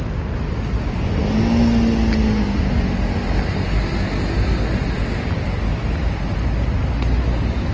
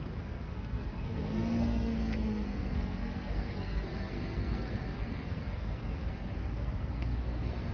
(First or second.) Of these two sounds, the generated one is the second